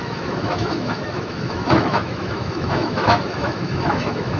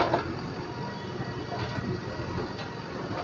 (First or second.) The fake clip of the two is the first